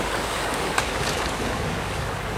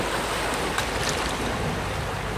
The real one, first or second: second